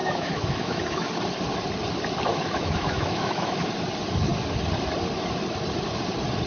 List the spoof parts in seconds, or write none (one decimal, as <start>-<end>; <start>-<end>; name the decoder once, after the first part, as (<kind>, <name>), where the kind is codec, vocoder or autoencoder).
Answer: 0.0-1.1 (autoencoder, DAC-VAE); 2.3-3.7